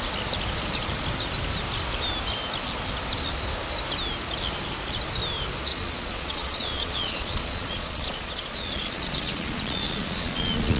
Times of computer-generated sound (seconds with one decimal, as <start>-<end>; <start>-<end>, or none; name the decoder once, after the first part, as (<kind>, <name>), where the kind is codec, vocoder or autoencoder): 5.7-10.8 (vocoder, Vocos)